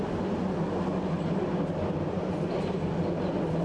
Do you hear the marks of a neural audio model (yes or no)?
no